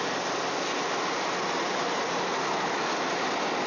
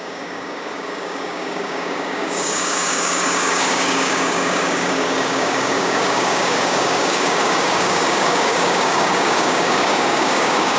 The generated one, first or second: second